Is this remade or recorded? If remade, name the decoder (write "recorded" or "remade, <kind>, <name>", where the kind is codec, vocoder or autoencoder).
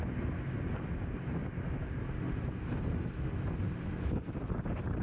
recorded